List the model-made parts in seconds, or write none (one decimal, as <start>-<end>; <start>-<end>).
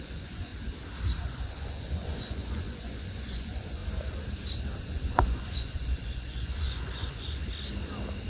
0.0-0.5; 1.2-3.8; 4.8-7.4